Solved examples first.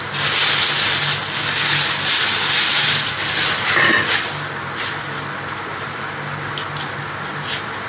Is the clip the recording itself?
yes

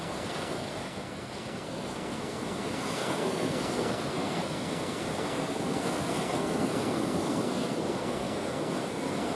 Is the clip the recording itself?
no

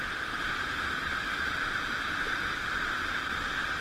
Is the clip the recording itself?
yes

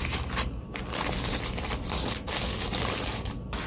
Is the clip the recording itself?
yes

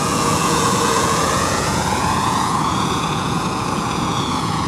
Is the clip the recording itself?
no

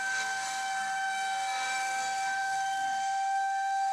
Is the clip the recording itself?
no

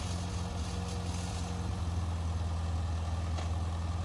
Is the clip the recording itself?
yes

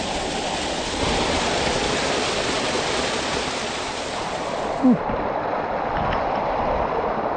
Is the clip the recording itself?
yes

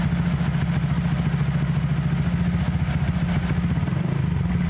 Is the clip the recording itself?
yes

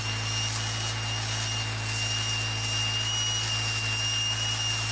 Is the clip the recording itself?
yes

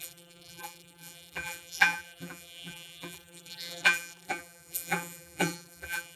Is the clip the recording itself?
no